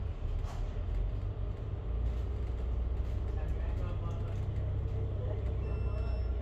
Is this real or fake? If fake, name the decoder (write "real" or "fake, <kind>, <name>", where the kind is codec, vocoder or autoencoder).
real